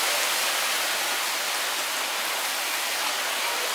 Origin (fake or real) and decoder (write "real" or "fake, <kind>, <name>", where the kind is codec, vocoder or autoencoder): real